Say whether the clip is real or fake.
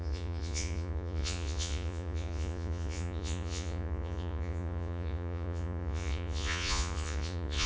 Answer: fake